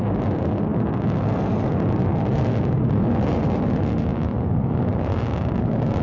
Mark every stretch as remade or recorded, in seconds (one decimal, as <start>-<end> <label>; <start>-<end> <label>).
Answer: 0.0-6.0 recorded